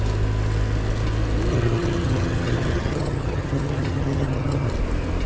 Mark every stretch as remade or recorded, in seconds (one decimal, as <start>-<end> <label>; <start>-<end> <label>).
0.0-1.5 recorded; 1.5-4.7 remade; 4.7-5.3 recorded